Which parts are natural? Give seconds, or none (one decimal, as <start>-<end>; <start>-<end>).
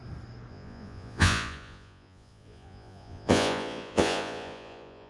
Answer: 0.0-0.5